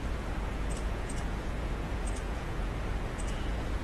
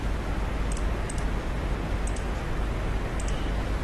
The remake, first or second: first